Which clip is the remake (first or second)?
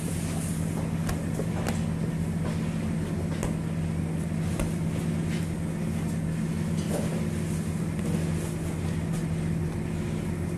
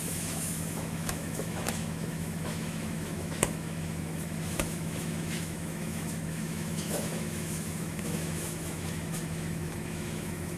second